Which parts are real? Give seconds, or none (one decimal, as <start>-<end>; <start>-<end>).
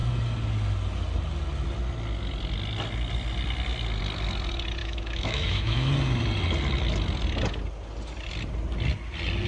0.0-4.8; 5.9-9.5